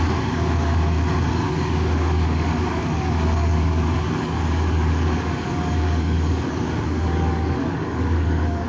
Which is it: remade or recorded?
remade